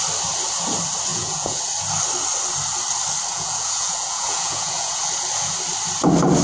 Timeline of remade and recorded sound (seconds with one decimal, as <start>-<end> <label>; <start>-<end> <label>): 0.0-1.1 recorded; 1.1-1.6 remade; 1.6-3.3 recorded; 3.3-5.0 remade; 5.0-6.4 recorded